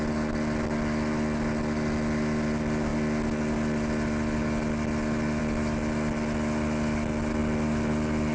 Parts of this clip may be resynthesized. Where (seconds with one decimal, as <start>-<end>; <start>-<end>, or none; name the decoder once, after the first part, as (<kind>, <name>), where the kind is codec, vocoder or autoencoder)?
none